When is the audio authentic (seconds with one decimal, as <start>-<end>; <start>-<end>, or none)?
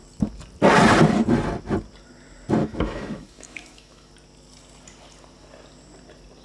0.0-2.6; 4.1-6.4